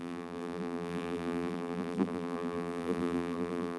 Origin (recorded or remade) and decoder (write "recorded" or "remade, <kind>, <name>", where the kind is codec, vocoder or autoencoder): remade, vocoder, BigVGAN v2